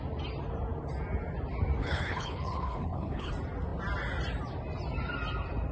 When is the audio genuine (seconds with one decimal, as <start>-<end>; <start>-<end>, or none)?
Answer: 0.0-1.8; 3.3-5.7